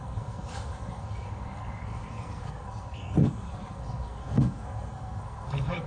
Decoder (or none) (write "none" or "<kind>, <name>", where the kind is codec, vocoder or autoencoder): codec, SNAC